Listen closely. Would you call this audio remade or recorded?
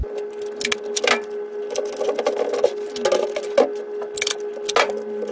recorded